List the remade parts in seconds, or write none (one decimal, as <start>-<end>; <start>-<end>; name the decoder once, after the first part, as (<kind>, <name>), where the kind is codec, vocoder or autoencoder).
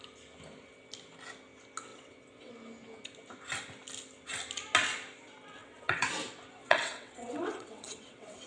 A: 1.9-2.5 (vocoder, WaveNeXt); 5.6-6.1; 6.6-8.5